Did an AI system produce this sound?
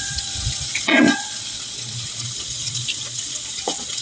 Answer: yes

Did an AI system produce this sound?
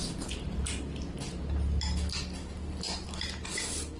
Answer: no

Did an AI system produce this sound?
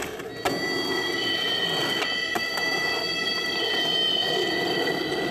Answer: no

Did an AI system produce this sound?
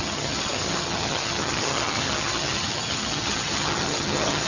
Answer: yes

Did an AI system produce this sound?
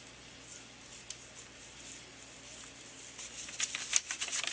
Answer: no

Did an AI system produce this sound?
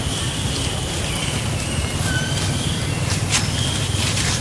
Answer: no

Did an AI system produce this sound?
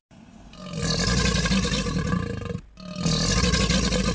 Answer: no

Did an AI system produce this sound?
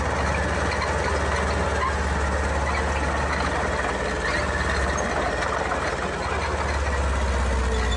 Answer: no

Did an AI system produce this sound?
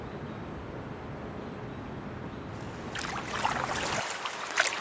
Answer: no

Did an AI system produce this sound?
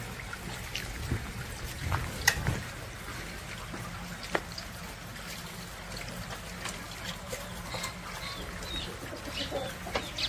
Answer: no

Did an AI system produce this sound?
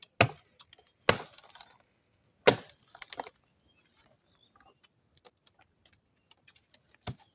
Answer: no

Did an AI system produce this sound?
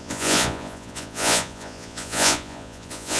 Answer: yes